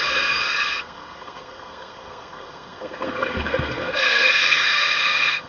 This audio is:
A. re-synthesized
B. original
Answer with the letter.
A